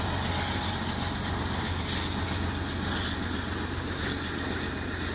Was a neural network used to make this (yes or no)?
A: no